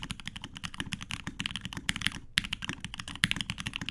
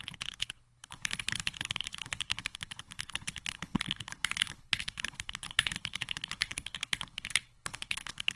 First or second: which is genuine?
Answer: first